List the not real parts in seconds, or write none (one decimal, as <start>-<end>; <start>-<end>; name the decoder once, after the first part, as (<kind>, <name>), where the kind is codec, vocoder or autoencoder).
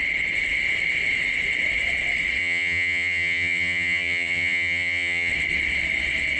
2.4-5.3 (vocoder, HiFi-GAN)